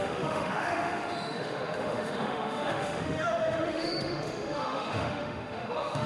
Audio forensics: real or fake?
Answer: fake